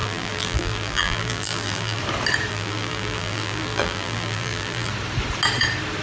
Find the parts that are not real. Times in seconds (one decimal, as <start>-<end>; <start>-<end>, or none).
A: 0.0-2.0; 2.5-4.9